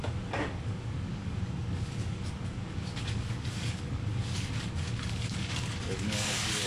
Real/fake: fake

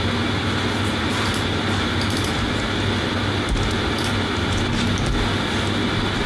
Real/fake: real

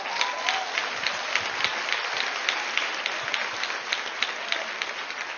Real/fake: real